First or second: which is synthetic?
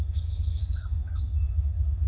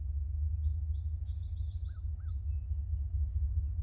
first